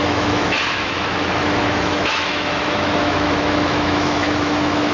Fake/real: fake